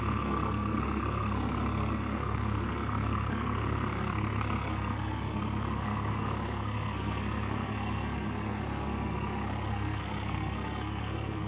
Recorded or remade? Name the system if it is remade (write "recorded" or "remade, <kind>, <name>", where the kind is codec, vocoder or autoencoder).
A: remade, codec, SNAC